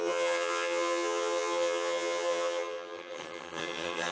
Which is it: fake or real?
fake